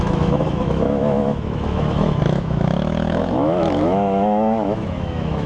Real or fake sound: fake